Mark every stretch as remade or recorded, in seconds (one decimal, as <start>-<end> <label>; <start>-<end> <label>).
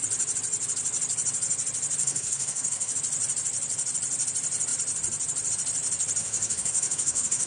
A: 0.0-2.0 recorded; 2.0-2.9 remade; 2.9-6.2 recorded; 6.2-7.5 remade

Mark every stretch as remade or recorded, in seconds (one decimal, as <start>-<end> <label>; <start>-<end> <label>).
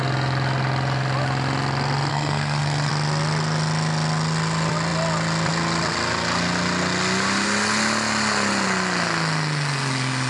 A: 0.0-2.1 recorded; 2.1-2.9 remade; 2.9-10.3 recorded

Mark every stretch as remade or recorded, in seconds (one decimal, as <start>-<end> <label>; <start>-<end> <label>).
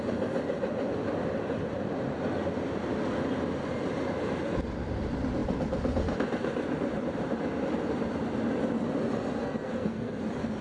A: 0.0-9.4 recorded; 9.4-10.2 remade; 10.2-10.6 recorded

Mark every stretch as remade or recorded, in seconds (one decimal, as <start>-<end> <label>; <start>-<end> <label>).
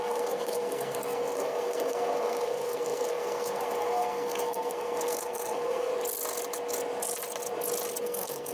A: 0.0-5.9 remade; 5.9-8.0 recorded; 8.0-8.5 remade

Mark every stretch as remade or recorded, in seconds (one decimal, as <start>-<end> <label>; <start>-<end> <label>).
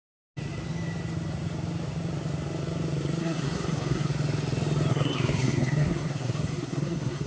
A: 0.0-3.2 recorded; 3.2-4.1 remade; 4.1-4.9 recorded; 4.9-7.3 remade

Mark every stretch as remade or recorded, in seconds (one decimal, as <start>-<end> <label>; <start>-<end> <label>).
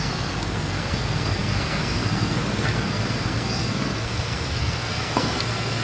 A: 0.0-5.8 remade